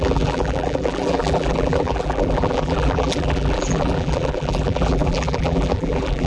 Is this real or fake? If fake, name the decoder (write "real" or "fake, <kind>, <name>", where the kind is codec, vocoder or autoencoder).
fake, vocoder, BigVGAN v2